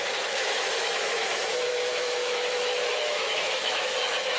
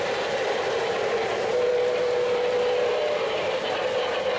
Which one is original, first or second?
second